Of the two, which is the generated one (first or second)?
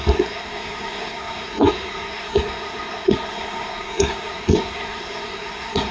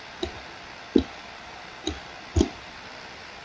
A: first